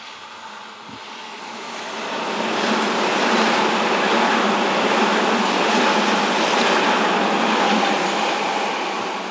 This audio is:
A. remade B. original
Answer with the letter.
B